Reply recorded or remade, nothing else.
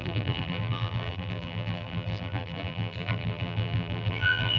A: remade